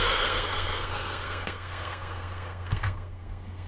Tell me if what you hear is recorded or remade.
remade